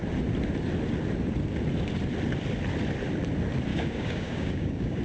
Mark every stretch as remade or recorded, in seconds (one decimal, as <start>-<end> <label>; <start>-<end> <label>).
0.0-3.7 recorded; 3.7-5.0 remade